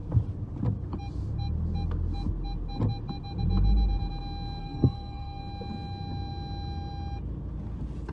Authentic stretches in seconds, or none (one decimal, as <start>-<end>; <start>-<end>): 0.0-4.6; 5.4-8.1